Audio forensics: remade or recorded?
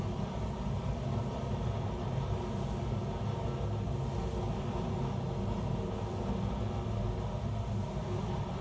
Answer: recorded